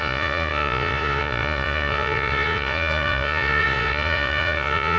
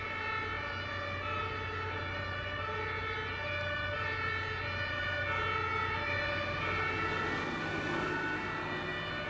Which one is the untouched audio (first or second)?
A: second